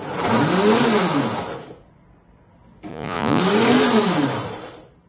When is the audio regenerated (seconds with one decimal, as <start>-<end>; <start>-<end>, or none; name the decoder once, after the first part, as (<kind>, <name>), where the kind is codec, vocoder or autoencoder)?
2.9-3.4 (vocoder, Vocos)